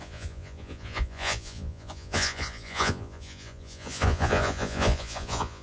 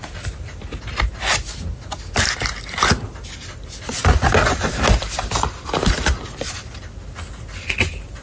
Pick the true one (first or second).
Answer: second